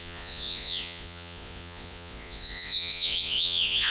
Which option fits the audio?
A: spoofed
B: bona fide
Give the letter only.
A